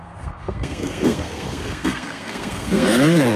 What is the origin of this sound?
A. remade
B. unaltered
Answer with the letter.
A